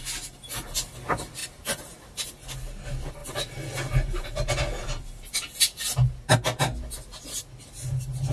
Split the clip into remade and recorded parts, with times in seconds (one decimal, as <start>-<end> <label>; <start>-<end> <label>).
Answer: 0.0-1.4 recorded; 1.4-2.3 remade; 2.3-8.3 recorded